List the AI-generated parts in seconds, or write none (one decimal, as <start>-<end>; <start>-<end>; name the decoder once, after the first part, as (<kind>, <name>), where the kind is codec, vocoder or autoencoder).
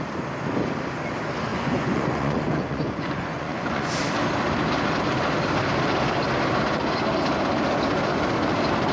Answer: 1.5-3.9 (vocoder, Vocos)